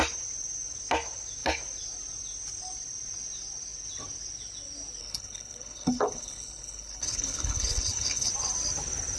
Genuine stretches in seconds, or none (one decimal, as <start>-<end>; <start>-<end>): 0.0-5.0; 8.3-9.2

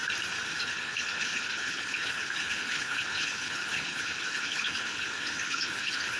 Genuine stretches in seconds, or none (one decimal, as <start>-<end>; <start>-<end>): 0.0-0.6

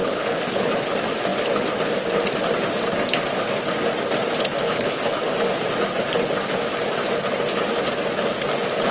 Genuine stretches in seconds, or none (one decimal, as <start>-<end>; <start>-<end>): 0.7-4.6; 5.2-8.9

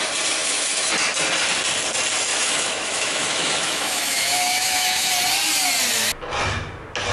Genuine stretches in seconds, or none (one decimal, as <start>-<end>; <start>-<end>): 0.0-0.4; 0.9-2.3; 5.1-7.1

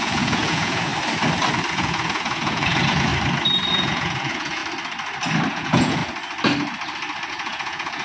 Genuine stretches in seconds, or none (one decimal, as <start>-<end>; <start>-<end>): 0.9-1.7; 3.1-3.7; 4.6-5.5; 6.0-7.3

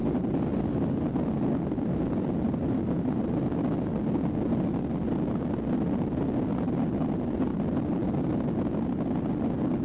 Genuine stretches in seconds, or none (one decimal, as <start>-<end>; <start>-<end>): 3.4-9.8